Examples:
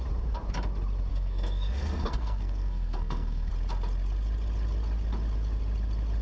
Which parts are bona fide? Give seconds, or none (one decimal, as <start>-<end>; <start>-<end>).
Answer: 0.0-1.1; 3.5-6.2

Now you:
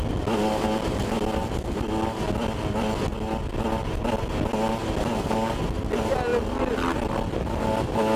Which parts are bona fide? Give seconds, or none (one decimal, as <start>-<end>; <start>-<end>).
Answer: 0.0-8.2

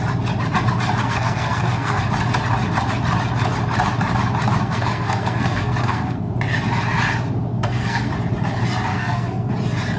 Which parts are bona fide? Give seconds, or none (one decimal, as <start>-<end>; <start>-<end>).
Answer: 0.0-1.0; 2.0-4.6; 6.3-7.5; 8.1-8.9; 9.5-10.0